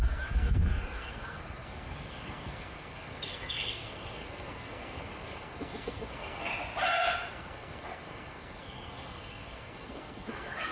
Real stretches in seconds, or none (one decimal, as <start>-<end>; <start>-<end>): 6.5-7.3